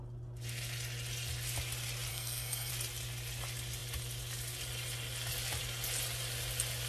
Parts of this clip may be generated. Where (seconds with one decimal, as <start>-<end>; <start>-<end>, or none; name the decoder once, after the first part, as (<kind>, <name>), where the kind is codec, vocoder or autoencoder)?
2.1-2.7 (codec, SNAC)